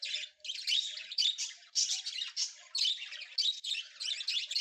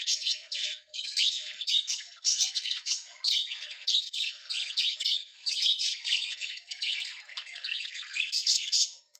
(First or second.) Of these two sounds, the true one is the first